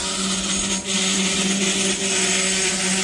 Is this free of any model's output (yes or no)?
yes